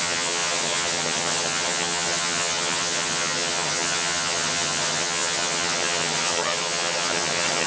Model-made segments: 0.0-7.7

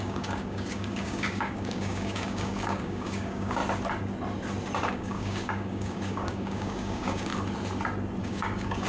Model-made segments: 0.0-3.6; 4.9-7.3; 8.2-8.9

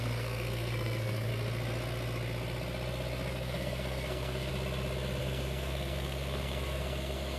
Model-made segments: 0.0-1.3; 3.3-4.5; 5.2-7.4

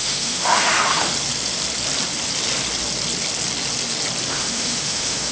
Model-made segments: 0.0-1.1; 4.3-5.3

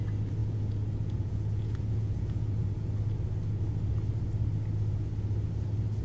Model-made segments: 0.4-2.9

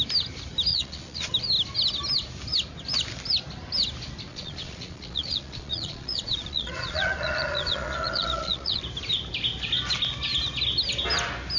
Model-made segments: 0.7-1.3; 4.3-8.8